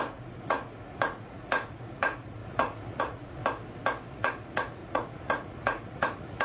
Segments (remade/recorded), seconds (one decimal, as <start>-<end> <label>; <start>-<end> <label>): 0.0-3.4 remade; 3.4-4.1 recorded; 4.1-6.4 remade